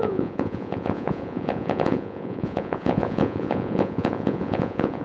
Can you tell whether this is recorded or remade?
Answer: remade